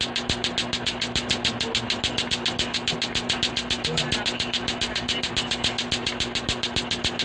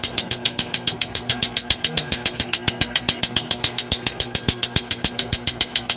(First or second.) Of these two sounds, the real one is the first